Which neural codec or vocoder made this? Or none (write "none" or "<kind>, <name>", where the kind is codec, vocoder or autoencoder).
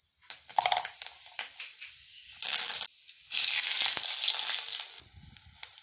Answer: none